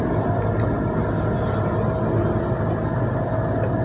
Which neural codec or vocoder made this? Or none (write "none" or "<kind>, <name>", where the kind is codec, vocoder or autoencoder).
none